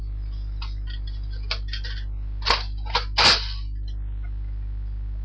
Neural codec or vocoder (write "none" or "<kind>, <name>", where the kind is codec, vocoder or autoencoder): none